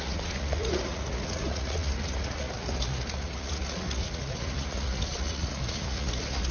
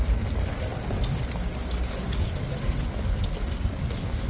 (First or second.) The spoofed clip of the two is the first